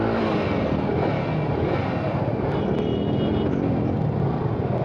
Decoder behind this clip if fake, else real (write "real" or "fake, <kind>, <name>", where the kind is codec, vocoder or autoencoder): real